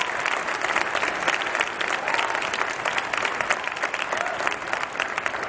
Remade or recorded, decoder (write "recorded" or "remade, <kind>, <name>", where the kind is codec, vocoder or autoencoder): recorded